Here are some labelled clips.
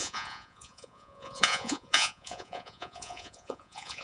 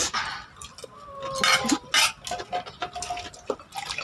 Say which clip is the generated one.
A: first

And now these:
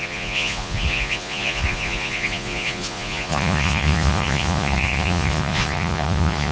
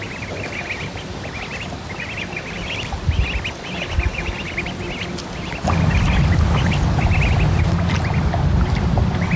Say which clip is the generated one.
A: first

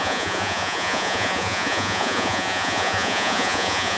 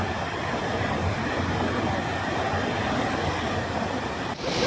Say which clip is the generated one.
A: first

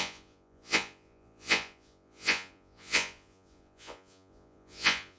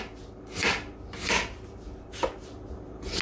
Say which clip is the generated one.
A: first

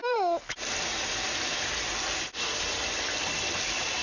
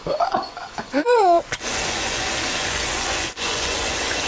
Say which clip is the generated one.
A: second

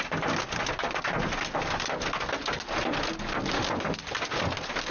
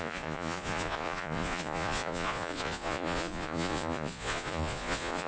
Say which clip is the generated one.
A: second